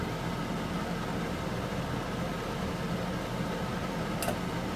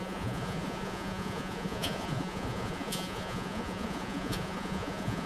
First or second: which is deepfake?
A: second